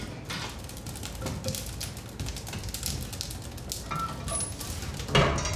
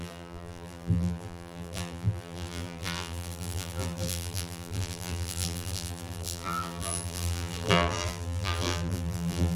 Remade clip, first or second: second